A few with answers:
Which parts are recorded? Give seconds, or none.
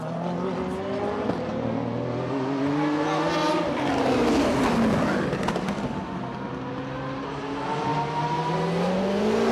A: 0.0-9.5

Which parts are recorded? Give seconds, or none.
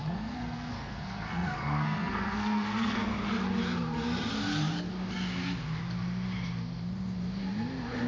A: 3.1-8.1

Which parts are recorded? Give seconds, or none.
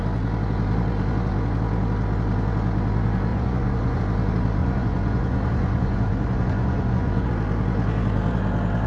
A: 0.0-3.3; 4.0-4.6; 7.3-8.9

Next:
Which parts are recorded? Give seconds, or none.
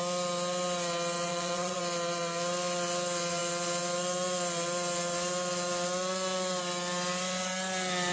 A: 0.0-1.3; 1.8-8.1